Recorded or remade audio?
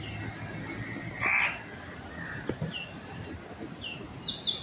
recorded